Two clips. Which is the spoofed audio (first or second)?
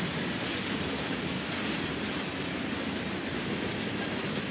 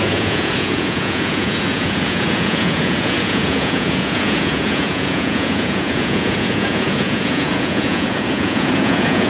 second